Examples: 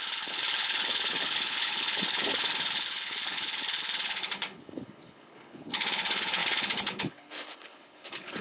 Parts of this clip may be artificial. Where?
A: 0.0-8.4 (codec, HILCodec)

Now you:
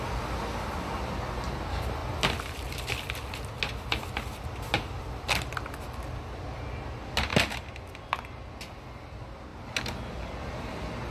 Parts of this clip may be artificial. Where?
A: none

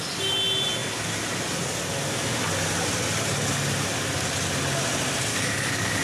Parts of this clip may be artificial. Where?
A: 5.3-6.0 (codec, DAC)